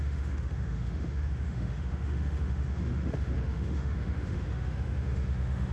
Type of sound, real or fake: fake